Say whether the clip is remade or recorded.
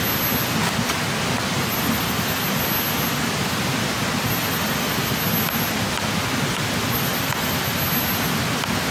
recorded